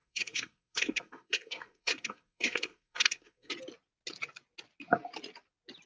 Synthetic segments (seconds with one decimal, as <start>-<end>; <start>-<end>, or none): 0.0-3.5